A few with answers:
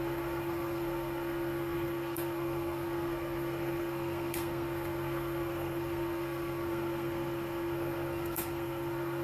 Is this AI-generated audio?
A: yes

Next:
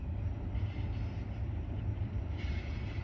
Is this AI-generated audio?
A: yes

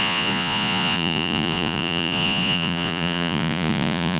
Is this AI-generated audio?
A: yes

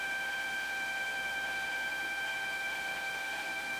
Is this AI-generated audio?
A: yes